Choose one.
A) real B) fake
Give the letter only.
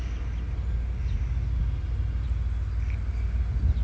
A